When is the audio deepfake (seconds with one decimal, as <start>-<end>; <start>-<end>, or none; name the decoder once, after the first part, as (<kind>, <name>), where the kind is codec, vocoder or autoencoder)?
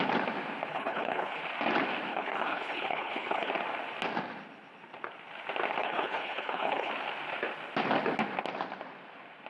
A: 0.7-1.4 (codec, HILCodec); 2.1-3.5; 5.8-6.9